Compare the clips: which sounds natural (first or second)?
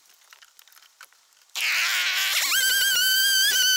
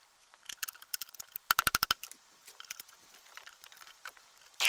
first